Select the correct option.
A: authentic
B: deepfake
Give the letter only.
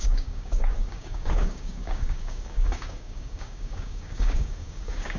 B